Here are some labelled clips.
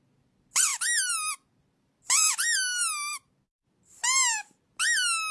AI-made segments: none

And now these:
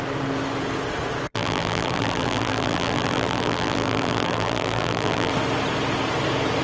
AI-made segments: 1.3-5.3 (vocoder, BigVGAN v2)

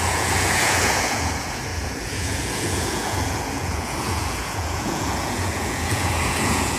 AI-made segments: 0.0-6.8 (vocoder, Vocos)

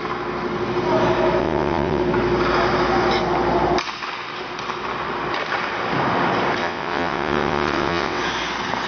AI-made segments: 1.4-2.0 (vocoder, WaveNeXt); 6.6-8.2

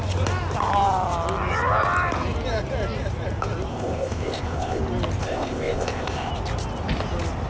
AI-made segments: 3.7-4.8 (codec, ZipCodec); 5.2-6.3